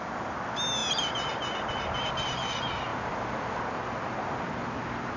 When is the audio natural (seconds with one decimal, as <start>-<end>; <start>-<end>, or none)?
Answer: 0.0-2.9; 3.6-5.2